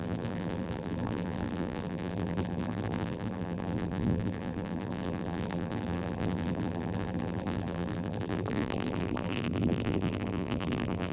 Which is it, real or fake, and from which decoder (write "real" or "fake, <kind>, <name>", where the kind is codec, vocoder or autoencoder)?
fake, vocoder, BigVGAN v2